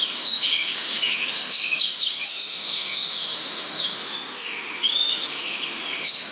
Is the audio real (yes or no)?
no